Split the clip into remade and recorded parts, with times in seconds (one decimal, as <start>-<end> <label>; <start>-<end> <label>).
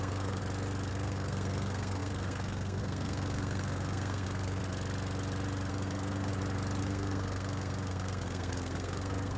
0.0-0.4 remade; 0.4-0.9 recorded; 0.9-4.6 remade; 4.6-5.7 recorded; 5.7-6.3 remade; 6.3-6.8 recorded; 6.8-9.4 remade